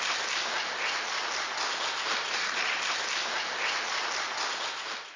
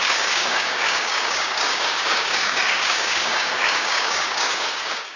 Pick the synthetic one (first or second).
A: second